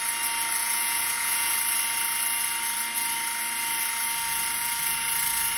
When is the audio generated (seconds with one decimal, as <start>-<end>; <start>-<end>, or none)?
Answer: 0.6-1.5